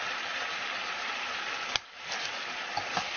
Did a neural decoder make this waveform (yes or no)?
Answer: no